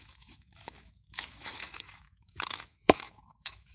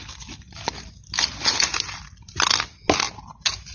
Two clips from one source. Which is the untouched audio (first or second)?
second